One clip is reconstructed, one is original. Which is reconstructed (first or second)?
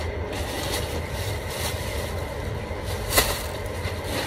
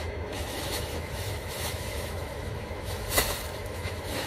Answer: second